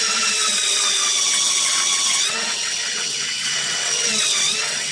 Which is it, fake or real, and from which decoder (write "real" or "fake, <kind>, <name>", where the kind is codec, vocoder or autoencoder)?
fake, vocoder, WaveNeXt